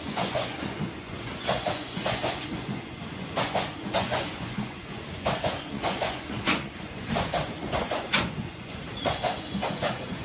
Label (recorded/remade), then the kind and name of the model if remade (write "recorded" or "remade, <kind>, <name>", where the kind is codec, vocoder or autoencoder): remade, vocoder, Vocos